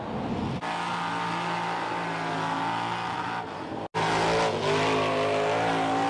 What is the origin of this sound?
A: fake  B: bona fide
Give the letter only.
B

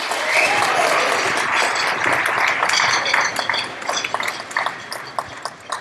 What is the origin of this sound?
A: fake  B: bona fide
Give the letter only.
B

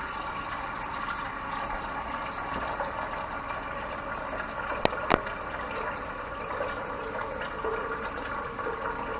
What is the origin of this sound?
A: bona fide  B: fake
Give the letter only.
A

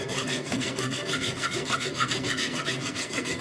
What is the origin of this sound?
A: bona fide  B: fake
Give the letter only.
B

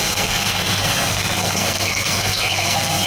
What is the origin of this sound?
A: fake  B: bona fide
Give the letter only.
A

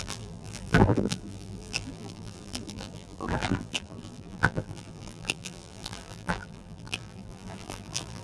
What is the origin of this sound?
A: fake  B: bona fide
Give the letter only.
A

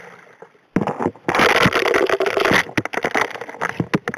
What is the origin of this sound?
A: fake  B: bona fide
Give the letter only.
B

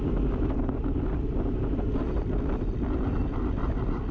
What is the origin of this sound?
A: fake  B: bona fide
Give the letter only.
B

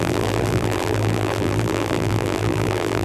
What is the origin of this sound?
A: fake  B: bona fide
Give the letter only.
A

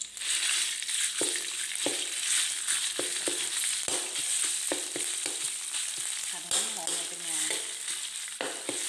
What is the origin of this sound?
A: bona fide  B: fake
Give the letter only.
A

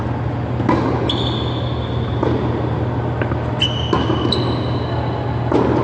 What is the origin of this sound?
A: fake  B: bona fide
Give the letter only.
B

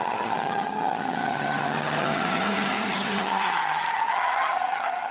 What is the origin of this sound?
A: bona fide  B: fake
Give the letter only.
B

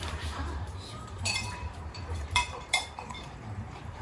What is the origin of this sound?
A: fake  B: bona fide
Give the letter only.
A